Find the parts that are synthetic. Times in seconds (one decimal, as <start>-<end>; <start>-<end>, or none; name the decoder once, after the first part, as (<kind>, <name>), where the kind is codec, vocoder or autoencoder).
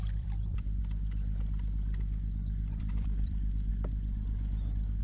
0.0-0.8 (vocoder, BigVGAN v2); 2.8-3.7